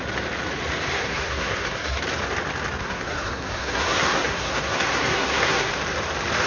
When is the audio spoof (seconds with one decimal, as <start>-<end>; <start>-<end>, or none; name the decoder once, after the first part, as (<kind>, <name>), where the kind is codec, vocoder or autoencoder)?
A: 0.9-2.0 (codec, SNAC); 2.8-5.7